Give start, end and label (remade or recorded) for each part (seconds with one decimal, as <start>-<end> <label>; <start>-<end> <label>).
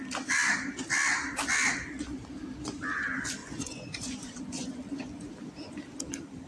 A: 0.0-3.4 recorded; 3.4-5.3 remade; 5.3-6.5 recorded